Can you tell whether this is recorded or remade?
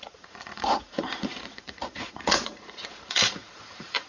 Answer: remade